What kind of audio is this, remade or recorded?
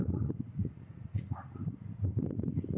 remade